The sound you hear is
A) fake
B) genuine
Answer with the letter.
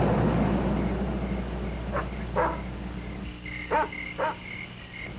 B